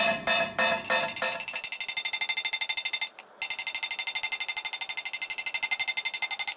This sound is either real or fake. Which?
real